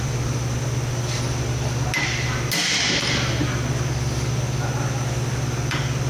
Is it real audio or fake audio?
real